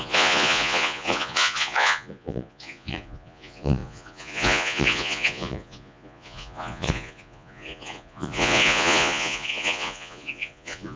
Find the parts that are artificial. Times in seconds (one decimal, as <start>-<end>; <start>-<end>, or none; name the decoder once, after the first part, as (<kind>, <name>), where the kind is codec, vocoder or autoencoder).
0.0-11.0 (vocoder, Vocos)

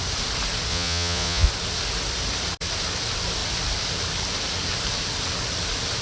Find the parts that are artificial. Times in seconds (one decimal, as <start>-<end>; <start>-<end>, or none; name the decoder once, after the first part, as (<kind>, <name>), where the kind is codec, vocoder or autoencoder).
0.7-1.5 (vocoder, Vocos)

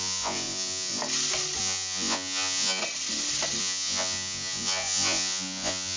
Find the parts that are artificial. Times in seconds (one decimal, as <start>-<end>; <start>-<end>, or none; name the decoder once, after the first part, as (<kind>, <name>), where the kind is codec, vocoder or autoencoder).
0.0-1.0 (vocoder, Vocos); 1.6-2.8; 3.6-6.0

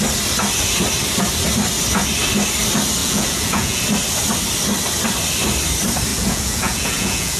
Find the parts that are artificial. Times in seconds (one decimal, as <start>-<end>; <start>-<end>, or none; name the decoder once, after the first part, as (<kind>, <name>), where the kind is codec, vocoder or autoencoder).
3.0-3.8 (vocoder, Vocos); 6.1-7.4